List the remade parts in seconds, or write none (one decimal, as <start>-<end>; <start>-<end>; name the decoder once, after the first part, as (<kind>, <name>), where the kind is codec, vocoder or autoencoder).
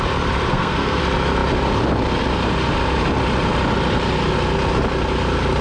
0.5-1.0 (codec, SNAC)